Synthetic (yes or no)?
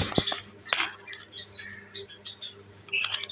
no